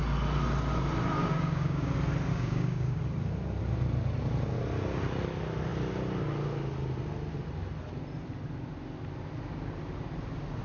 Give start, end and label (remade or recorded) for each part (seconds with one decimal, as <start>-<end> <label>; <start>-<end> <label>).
0.0-1.2 recorded; 1.2-1.9 remade; 1.9-2.3 recorded; 2.3-3.0 remade; 3.0-10.6 recorded